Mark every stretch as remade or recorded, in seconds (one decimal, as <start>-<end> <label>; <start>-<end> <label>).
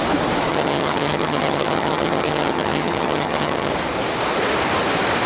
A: 0.0-0.5 recorded; 0.5-3.7 remade; 3.7-5.3 recorded